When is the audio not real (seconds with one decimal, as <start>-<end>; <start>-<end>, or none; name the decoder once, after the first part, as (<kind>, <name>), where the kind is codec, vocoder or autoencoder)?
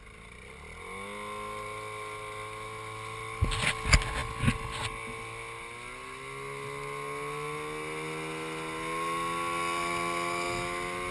none